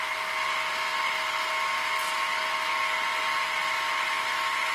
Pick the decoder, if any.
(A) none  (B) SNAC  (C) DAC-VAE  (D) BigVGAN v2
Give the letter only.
A